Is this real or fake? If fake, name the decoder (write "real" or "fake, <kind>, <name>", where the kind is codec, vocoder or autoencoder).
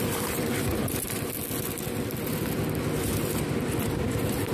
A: real